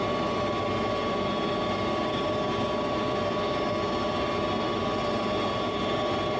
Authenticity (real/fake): real